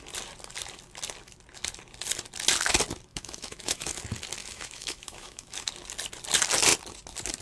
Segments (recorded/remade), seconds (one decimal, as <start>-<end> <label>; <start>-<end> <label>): 0.0-3.1 recorded; 3.1-4.0 remade; 4.0-4.4 recorded; 4.4-5.7 remade; 5.7-7.4 recorded